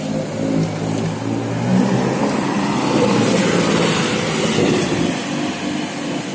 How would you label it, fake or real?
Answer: real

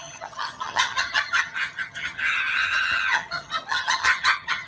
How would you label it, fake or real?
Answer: fake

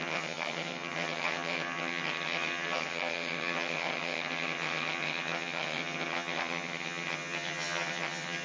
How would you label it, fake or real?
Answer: fake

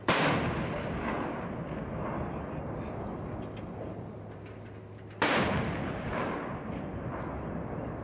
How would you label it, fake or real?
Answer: real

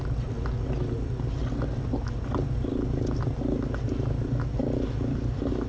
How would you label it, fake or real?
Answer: real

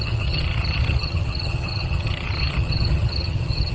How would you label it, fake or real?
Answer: fake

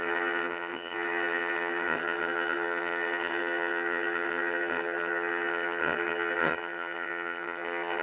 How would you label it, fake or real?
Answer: fake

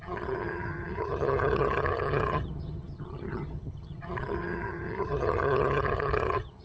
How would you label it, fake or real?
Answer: fake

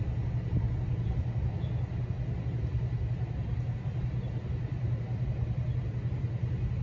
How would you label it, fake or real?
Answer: real